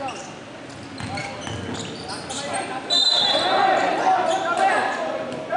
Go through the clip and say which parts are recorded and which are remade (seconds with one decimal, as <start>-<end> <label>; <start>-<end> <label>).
0.0-5.6 recorded